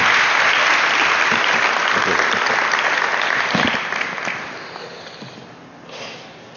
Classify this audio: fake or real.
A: real